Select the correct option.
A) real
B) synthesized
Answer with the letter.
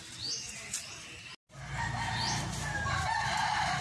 A